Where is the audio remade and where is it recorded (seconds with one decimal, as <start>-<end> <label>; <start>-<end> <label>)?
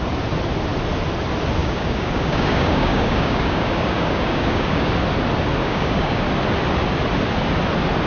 0.0-1.6 recorded; 1.6-4.9 remade; 4.9-5.6 recorded; 5.6-6.2 remade; 6.2-8.1 recorded